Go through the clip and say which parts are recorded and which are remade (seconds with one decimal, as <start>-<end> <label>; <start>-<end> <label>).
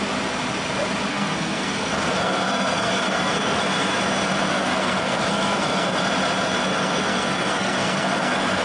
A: 0.0-1.1 recorded; 1.1-4.0 remade; 4.0-4.5 recorded; 4.5-6.0 remade; 6.0-6.7 recorded; 6.7-8.6 remade